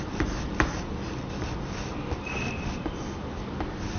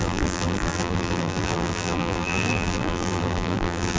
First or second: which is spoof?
second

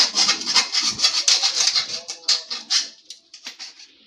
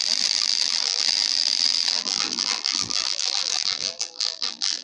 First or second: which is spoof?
second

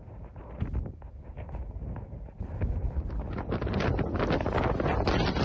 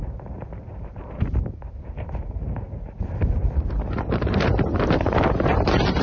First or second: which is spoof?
second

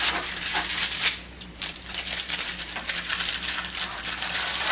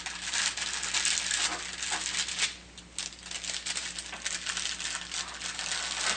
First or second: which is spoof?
first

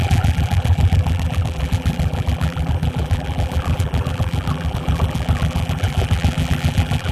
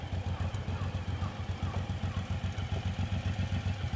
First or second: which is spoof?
first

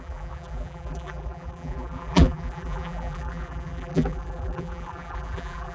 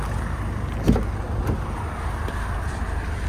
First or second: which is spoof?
first